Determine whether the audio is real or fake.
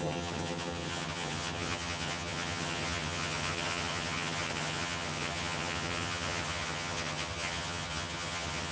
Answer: fake